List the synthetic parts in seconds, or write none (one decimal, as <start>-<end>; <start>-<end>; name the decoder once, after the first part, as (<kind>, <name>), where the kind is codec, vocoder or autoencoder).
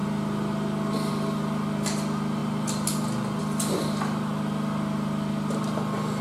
none